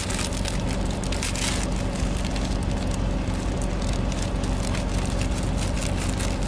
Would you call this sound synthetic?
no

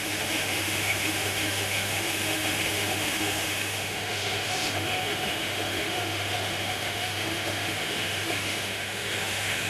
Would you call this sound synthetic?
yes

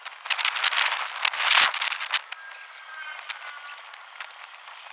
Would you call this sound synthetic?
no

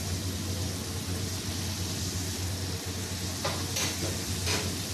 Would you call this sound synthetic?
no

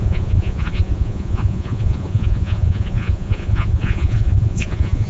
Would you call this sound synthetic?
yes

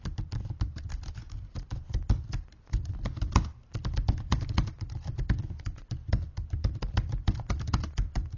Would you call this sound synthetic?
yes